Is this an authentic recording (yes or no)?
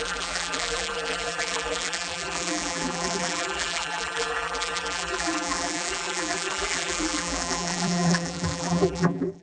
no